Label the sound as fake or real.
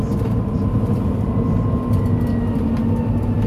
real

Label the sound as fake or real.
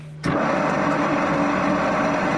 real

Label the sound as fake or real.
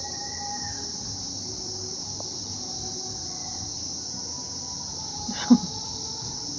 real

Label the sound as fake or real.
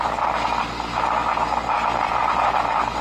real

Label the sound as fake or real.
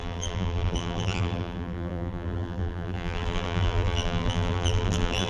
fake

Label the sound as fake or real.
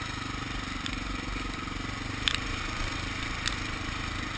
fake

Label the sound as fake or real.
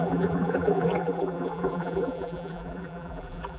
fake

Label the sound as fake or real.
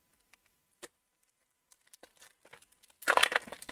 real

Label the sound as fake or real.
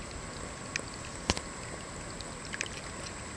real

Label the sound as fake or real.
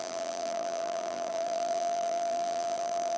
fake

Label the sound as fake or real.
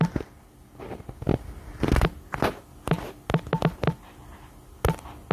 real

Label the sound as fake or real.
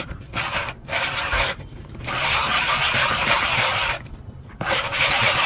fake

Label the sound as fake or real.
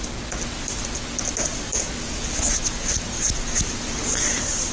real